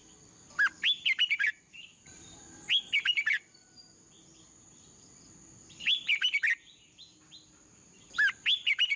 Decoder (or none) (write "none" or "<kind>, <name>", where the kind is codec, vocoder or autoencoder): none